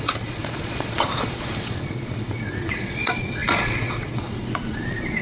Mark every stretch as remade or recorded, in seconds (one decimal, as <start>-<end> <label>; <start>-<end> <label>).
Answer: 0.0-5.2 remade